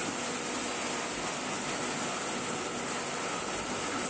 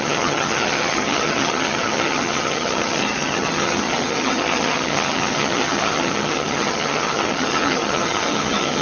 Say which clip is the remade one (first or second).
second